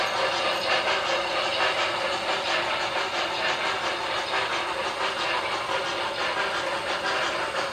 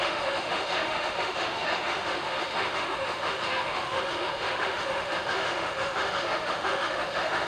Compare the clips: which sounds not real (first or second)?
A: second